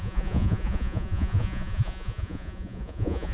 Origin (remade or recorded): remade